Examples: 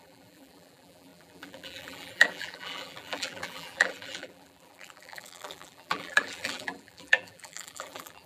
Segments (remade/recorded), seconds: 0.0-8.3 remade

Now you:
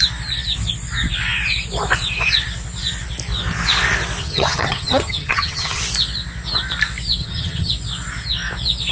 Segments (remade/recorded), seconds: 0.0-4.2 recorded; 4.2-5.8 remade; 5.8-7.2 recorded; 7.2-7.7 remade; 7.7-8.9 recorded

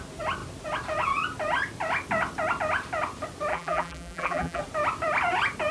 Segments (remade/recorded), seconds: 0.0-3.5 recorded; 3.5-4.6 remade; 4.6-5.7 recorded

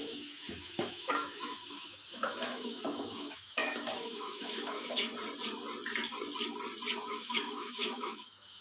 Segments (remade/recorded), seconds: 0.0-5.1 remade; 5.1-7.1 recorded; 7.1-8.6 remade

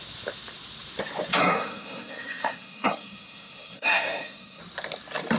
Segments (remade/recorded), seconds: 0.0-1.4 recorded; 1.4-4.6 remade; 4.6-5.4 recorded

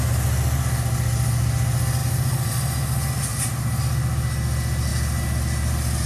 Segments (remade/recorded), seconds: 0.0-2.0 recorded; 2.0-2.5 remade; 2.5-3.3 recorded; 3.3-3.8 remade; 3.8-6.1 recorded